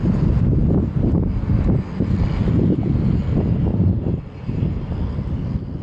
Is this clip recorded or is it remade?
recorded